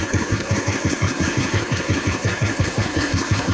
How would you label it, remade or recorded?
remade